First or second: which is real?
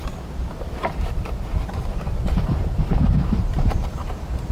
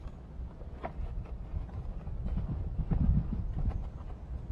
second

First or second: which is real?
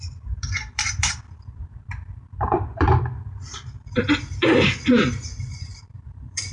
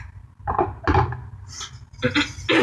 second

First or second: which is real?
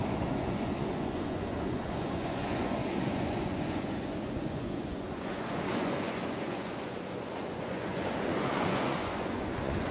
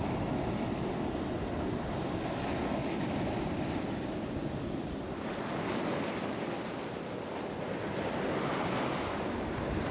second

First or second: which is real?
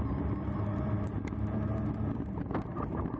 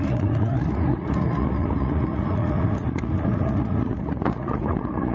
first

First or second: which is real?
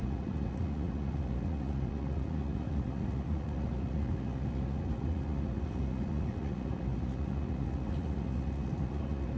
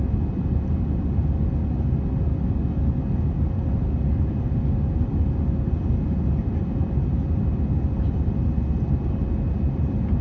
second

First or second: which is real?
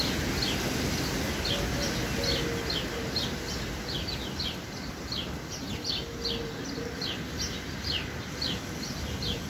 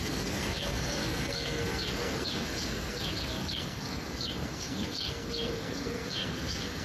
first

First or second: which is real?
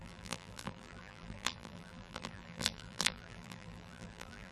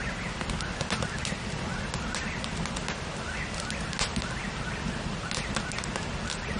second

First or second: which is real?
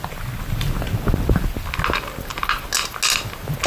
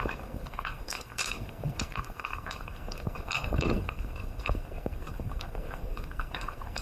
first